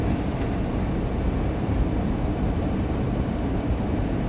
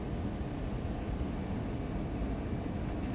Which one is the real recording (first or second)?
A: second